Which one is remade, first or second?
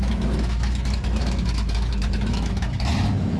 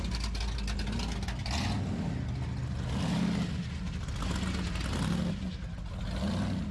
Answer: first